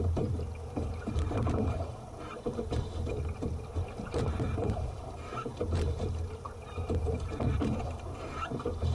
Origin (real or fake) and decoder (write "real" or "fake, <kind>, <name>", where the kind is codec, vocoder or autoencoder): fake, vocoder, BigVGAN v2